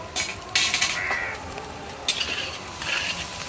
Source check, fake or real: real